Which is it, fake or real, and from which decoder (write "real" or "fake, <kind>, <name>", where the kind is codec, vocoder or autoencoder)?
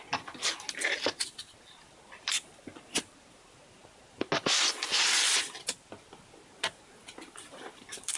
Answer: real